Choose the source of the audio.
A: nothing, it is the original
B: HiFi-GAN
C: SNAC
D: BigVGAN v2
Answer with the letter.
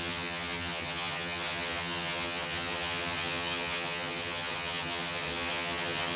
B